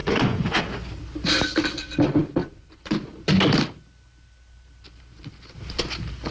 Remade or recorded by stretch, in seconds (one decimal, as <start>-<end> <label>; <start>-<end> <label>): 0.0-0.6 remade; 0.6-2.4 recorded; 2.4-3.0 remade; 3.0-6.3 recorded